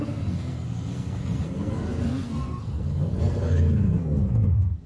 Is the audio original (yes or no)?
no